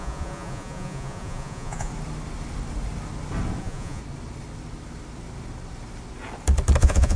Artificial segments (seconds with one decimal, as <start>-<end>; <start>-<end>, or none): 0.0-1.9; 3.6-4.0; 6.8-7.2